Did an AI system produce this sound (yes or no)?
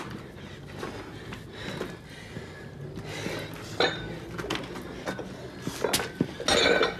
no